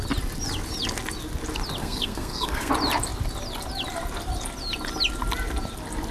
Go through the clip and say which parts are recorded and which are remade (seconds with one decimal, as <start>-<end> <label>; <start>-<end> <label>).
0.0-1.8 recorded; 1.8-2.7 remade; 2.7-6.1 recorded